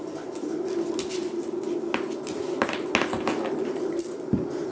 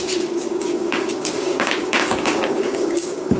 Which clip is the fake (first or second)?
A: second